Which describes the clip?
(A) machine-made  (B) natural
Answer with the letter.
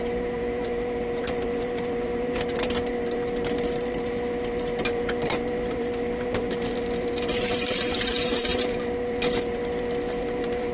A